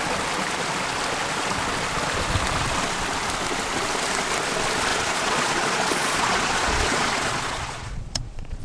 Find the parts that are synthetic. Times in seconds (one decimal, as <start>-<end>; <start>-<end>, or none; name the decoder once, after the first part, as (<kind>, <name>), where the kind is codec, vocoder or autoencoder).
4.9-8.6 (vocoder, Vocos)

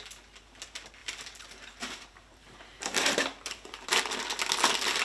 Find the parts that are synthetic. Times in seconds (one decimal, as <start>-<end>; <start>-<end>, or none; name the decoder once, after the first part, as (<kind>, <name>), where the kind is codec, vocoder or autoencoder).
1.0-4.0 (vocoder, BigVGAN v2)

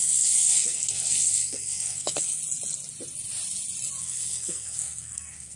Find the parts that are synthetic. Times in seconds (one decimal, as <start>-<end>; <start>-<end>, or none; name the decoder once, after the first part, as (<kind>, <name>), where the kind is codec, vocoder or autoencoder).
0.0-2.4 (codec, SNAC); 4.0-5.6

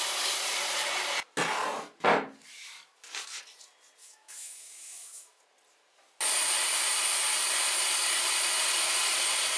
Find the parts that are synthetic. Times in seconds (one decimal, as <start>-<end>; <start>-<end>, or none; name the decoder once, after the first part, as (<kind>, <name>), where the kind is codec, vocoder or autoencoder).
4.0-5.4 (autoencoder, DAC-VAE)